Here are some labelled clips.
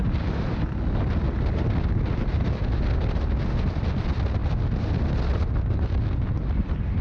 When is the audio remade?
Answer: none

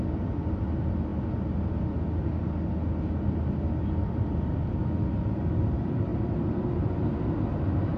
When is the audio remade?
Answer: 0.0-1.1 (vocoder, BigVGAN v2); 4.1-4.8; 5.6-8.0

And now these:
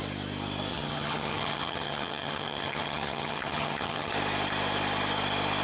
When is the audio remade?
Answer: 0.7-4.1 (vocoder, HiFi-GAN)

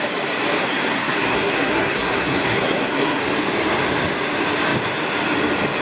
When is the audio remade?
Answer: 0.6-3.2 (codec, SNAC)

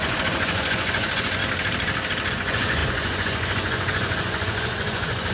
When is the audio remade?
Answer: 0.0-1.4 (vocoder, Vocos); 2.3-5.3

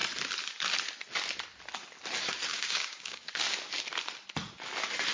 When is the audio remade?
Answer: 2.5-3.4 (codec, DAC)

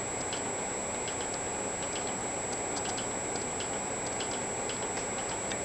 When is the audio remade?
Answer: none

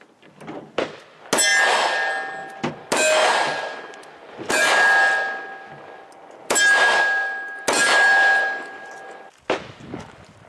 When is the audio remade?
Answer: none